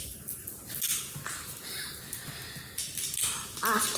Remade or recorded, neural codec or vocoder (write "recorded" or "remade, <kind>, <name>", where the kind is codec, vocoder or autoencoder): recorded